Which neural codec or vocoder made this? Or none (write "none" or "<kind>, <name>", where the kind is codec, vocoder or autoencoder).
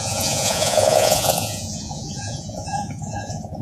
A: vocoder, Vocos